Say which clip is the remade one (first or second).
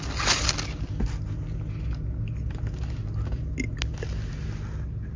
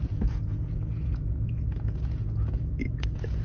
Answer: second